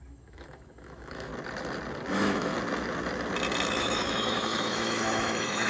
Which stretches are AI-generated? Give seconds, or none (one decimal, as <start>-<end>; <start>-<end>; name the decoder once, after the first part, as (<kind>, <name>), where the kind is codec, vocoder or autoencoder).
0.0-1.3 (autoencoder, DAC-VAE); 2.1-2.5; 3.8-5.7